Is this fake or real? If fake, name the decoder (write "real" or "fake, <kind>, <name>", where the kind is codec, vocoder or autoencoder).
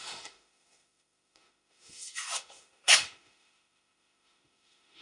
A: fake, autoencoder, DAC-VAE